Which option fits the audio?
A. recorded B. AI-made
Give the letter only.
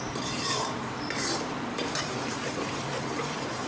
B